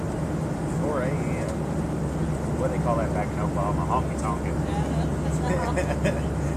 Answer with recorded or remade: recorded